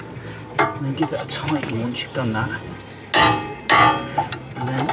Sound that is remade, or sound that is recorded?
recorded